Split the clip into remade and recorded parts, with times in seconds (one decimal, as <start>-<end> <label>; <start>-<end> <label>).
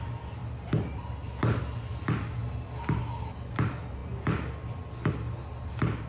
0.0-6.1 recorded